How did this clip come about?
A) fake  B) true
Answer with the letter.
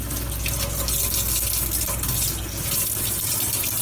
B